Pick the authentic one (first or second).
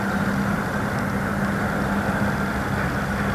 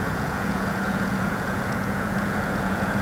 first